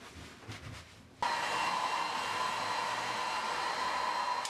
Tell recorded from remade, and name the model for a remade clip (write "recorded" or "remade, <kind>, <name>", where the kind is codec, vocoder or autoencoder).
recorded